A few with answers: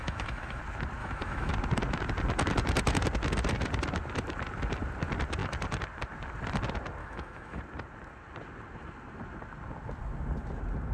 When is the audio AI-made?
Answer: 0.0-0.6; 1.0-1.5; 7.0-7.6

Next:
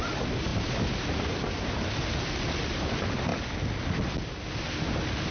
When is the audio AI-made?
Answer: none